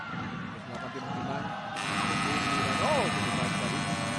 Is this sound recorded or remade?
recorded